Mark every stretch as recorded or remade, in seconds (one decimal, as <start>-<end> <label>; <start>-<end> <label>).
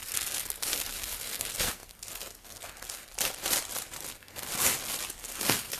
0.0-3.1 remade; 3.1-4.1 recorded; 4.1-4.5 remade; 4.5-5.2 recorded; 5.2-5.8 remade